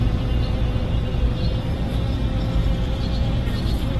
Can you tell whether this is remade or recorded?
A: recorded